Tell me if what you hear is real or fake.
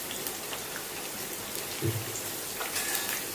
real